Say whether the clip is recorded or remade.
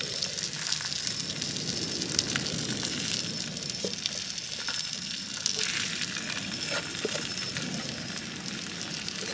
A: recorded